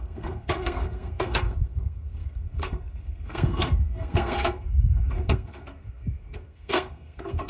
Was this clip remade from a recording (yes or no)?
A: yes